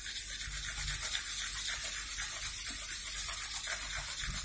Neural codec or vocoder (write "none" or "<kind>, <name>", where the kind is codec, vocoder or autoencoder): none